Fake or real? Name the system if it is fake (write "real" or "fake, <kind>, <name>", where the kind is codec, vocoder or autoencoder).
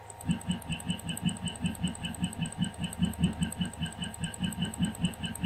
real